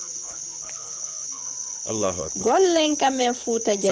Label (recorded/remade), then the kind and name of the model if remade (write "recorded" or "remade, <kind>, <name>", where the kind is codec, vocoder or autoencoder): remade, codec, HILCodec